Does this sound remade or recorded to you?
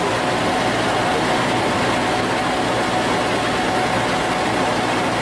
recorded